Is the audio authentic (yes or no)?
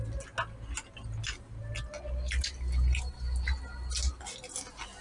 yes